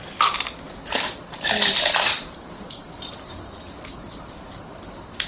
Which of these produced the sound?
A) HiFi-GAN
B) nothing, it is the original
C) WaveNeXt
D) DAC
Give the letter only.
B